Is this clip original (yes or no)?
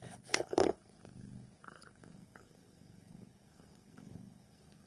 no